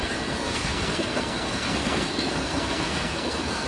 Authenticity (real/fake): fake